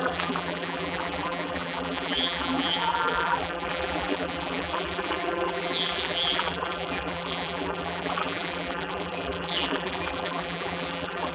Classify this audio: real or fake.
fake